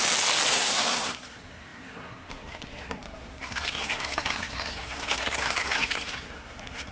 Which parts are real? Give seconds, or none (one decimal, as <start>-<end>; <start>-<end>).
0.0-0.5